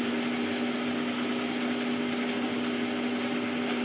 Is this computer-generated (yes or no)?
no